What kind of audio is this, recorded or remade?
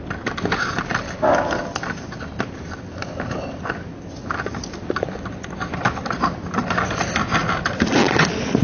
recorded